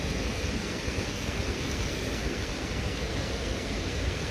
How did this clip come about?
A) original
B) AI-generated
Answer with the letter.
B